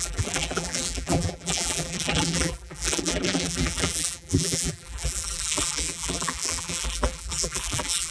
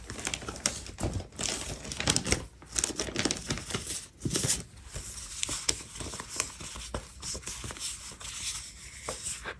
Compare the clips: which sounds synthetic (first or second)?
first